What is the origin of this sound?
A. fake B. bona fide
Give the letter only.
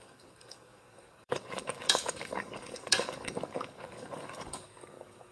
A